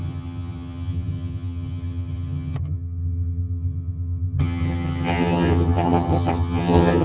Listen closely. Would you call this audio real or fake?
fake